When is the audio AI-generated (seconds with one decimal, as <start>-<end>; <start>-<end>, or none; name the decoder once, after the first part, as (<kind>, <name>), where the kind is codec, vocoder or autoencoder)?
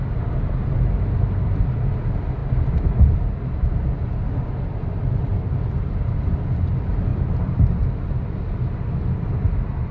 5.3-6.3 (vocoder, BigVGAN v2); 7.1-7.7